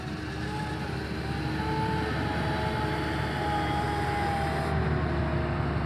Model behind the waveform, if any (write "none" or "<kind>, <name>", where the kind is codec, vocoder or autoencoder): none